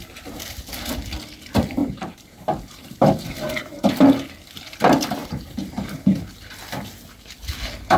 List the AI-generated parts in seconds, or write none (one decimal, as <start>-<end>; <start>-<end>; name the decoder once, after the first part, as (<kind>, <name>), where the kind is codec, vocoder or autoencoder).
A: 1.8-3.9 (vocoder, BigVGAN v2); 5.2-6.2